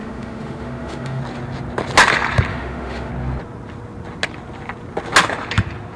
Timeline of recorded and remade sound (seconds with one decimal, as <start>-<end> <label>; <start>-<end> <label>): 0.0-1.2 remade; 1.2-2.5 recorded; 2.5-3.1 remade; 3.1-6.0 recorded